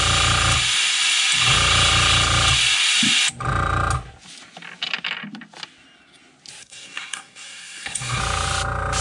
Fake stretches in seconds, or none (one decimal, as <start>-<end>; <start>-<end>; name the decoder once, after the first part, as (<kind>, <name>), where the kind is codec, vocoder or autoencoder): 6.6-8.2 (codec, SNAC)